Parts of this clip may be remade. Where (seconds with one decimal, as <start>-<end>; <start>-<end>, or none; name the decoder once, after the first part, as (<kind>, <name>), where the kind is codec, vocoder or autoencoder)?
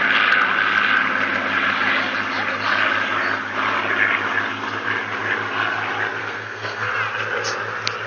6.2-6.9 (codec, SNAC)